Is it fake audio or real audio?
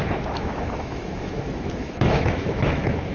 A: fake